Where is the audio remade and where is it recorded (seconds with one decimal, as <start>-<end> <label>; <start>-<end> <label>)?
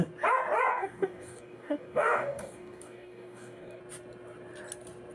0.0-0.7 recorded; 0.7-3.8 remade; 3.8-5.1 recorded